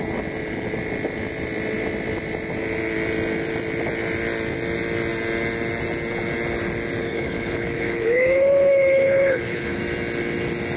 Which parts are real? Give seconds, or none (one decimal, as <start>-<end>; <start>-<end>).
0.0-7.0; 9.8-10.8